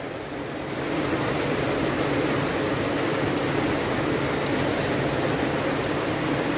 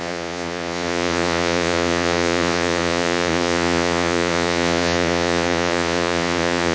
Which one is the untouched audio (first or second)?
first